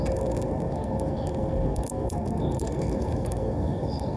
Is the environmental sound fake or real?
fake